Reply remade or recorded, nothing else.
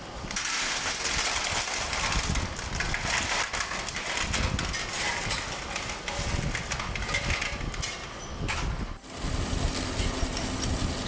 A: recorded